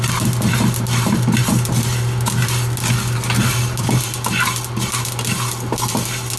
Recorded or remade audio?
recorded